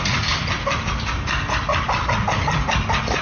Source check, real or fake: real